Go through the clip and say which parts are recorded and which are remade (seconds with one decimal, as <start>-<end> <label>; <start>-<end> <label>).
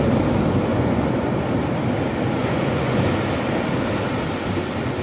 0.0-0.7 recorded; 0.7-1.3 remade; 1.3-2.4 recorded; 2.4-3.0 remade; 3.0-5.0 recorded